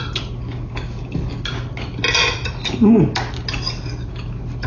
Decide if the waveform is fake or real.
real